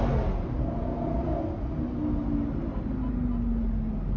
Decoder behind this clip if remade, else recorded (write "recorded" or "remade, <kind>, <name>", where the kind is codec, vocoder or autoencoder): recorded